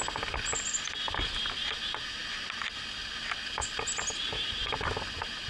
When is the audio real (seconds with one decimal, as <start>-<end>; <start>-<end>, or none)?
0.0-5.5